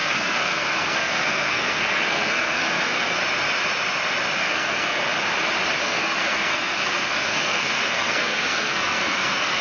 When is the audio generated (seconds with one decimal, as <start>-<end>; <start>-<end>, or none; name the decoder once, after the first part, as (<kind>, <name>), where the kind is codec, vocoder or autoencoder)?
0.0-3.2 (codec, SNAC); 4.4-5.1; 5.8-9.6